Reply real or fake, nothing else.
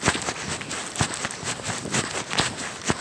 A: real